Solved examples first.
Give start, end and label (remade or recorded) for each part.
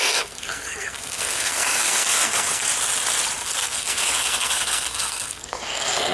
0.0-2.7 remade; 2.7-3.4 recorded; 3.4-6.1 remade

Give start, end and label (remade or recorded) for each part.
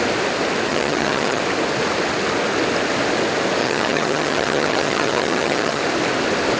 0.0-0.7 recorded; 0.7-1.4 remade; 1.4-3.6 recorded; 3.6-5.8 remade; 5.8-6.6 recorded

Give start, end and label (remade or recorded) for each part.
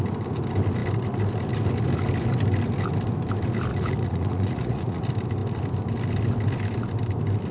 0.0-3.7 recorded; 3.7-5.0 remade; 5.0-7.5 recorded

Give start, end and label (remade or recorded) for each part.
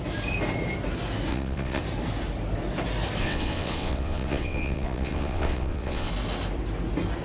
0.0-1.3 recorded; 1.3-1.8 remade; 1.8-3.2 recorded; 3.2-6.1 remade; 6.1-7.2 recorded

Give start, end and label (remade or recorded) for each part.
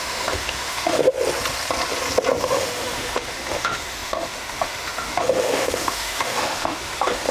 0.0-1.0 remade; 1.0-2.4 recorded; 2.4-7.3 remade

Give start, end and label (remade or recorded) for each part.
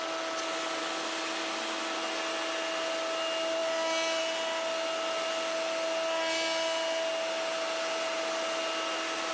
0.0-9.3 recorded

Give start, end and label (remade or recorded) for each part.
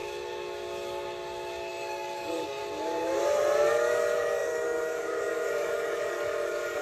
0.0-1.7 recorded; 1.7-2.6 remade; 2.6-3.7 recorded; 3.7-6.8 remade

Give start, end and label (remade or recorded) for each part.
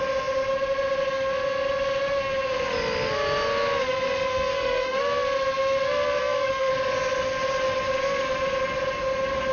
0.0-4.3 recorded; 4.3-5.0 remade; 5.0-6.2 recorded; 6.2-6.7 remade; 6.7-9.5 recorded